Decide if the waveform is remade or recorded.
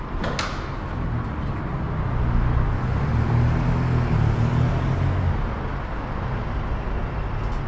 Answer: recorded